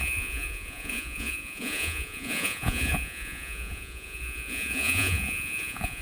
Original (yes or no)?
no